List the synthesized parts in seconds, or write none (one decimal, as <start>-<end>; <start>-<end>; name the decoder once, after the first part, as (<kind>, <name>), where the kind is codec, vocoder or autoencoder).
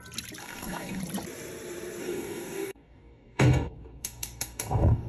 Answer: 0.4-1.0 (codec, DAC); 2.0-5.1